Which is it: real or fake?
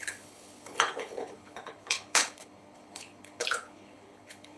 fake